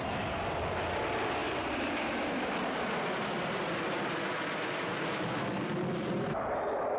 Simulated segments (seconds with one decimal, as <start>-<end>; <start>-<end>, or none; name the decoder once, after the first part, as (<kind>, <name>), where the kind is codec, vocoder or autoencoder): none